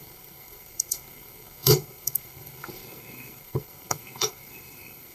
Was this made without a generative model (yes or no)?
no